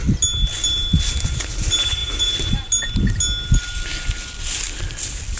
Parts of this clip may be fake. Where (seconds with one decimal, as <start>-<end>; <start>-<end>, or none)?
none